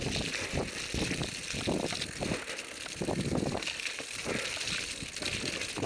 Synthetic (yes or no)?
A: no